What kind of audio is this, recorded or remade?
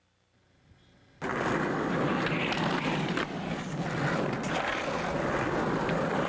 recorded